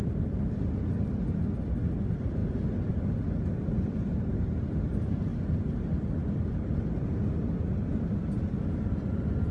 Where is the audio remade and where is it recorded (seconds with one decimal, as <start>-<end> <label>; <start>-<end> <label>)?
0.0-9.5 recorded